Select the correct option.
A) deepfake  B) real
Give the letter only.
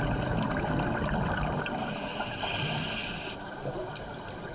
B